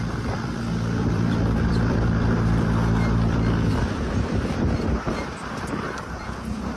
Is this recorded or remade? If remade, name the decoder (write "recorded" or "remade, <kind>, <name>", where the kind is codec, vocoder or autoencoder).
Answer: remade, vocoder, BigVGAN v2